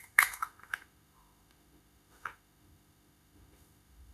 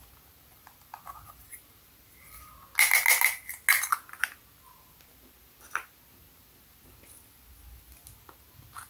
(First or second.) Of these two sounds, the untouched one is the second